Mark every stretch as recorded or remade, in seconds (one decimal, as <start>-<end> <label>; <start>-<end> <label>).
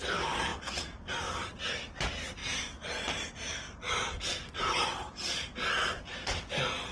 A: 0.0-6.9 recorded